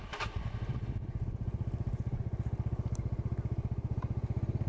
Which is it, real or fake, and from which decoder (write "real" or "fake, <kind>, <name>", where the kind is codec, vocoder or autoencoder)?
real